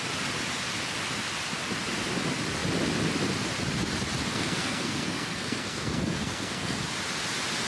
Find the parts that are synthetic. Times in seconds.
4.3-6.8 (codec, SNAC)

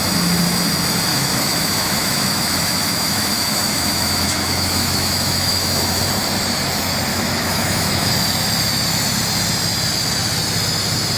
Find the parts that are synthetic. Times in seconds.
1.1-6.0 (autoencoder, DAC-VAE); 7.1-8.1

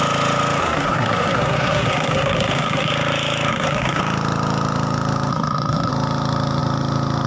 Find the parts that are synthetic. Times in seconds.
0.6-2.9 (codec, SNAC); 3.5-4.0; 5.3-5.9